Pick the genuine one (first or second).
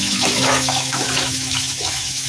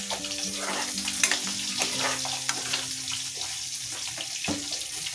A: second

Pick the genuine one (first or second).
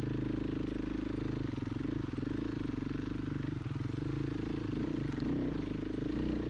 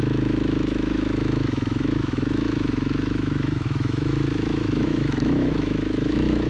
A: first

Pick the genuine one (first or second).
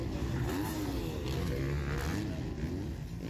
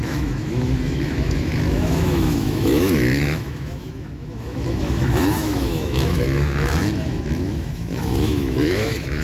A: first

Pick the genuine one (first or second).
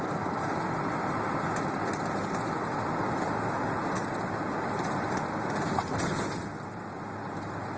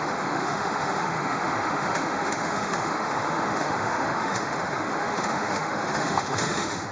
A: first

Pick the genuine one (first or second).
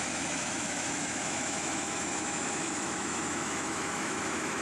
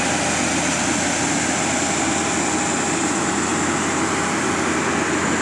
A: second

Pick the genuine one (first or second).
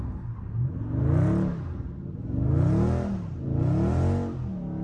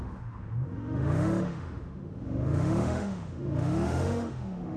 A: first